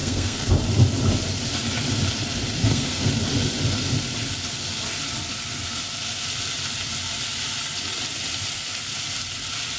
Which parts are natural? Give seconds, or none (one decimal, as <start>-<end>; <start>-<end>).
0.5-2.6; 3.1-9.8